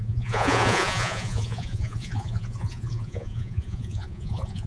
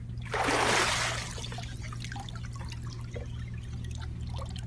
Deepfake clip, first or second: first